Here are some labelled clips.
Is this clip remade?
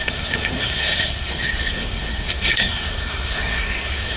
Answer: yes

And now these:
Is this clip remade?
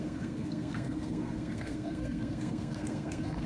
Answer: yes